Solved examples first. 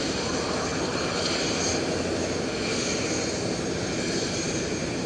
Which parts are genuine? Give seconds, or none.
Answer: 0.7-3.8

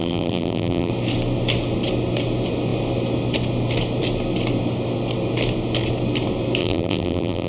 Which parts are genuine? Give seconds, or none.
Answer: 0.9-6.6

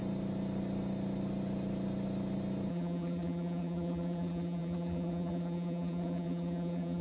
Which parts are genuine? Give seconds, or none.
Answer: 0.0-2.7

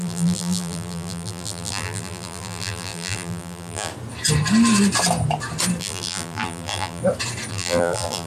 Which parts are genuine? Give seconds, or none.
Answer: 3.9-5.8; 7.0-7.5

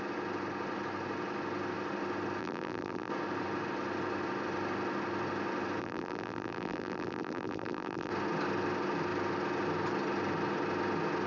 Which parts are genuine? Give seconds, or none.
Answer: 0.0-2.4; 3.1-5.8; 8.1-11.3

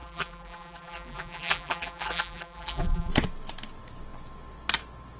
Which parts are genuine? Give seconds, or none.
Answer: 3.1-5.2

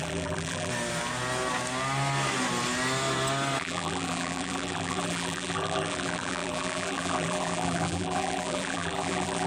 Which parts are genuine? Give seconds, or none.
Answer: 0.7-3.6